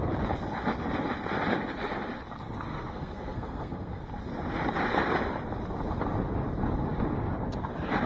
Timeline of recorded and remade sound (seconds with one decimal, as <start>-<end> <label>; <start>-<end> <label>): 0.0-2.7 recorded; 2.7-4.0 remade; 4.0-8.1 recorded